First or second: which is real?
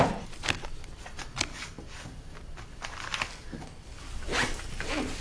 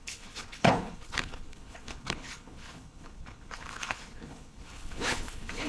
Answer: first